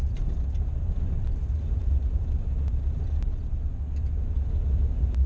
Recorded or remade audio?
recorded